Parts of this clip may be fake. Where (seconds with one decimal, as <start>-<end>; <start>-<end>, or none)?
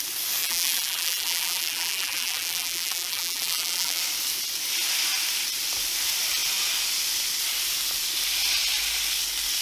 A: 0.4-4.0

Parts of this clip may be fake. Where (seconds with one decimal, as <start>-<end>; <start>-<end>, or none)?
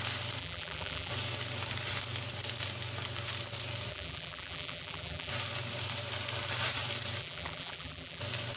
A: 0.4-1.1; 3.9-5.3; 7.2-8.2